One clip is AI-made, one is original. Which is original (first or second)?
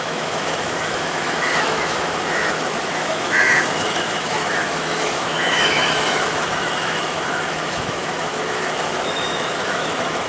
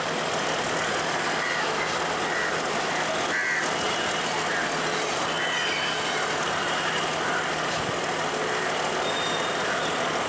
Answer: second